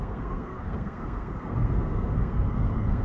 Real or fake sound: fake